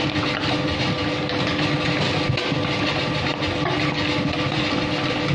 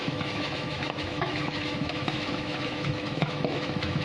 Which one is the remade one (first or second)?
second